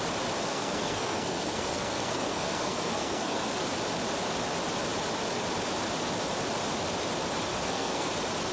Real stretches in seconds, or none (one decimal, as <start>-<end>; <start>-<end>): 0.0-0.5; 3.5-7.5; 8.1-8.5